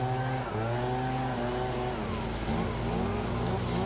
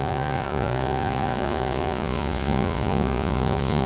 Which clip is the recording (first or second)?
first